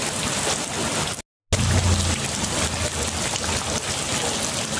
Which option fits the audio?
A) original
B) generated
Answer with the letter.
A